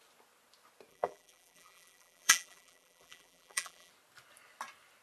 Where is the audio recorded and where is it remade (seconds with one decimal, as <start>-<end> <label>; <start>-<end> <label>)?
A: 0.0-0.9 recorded; 0.9-3.9 remade; 3.9-5.0 recorded